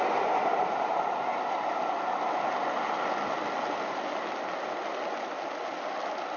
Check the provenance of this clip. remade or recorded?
recorded